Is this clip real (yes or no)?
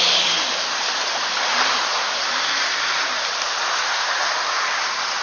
yes